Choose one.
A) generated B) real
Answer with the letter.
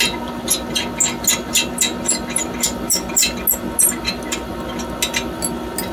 B